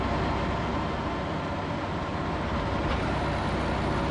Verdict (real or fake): real